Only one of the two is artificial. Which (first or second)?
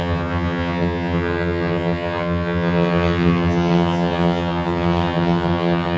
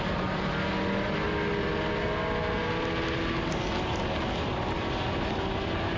first